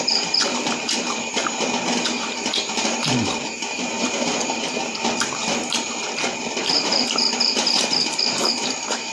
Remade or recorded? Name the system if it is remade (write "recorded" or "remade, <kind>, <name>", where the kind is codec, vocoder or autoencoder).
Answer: remade, vocoder, BigVGAN v2